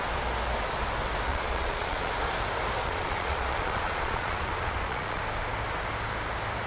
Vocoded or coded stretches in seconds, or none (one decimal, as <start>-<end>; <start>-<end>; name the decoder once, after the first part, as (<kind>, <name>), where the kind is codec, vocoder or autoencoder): 1.3-2.1 (vocoder, Vocos); 2.8-5.2